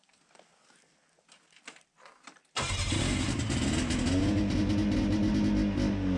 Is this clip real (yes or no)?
yes